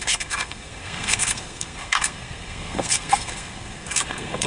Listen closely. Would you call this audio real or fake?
fake